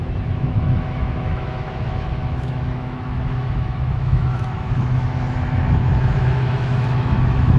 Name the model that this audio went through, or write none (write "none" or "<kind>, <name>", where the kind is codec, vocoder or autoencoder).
autoencoder, DAC-VAE